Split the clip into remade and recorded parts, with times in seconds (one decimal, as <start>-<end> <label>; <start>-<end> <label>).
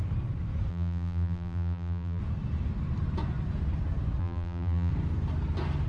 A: 0.0-0.7 recorded; 0.7-2.2 remade; 2.2-4.2 recorded; 4.2-4.9 remade; 4.9-5.9 recorded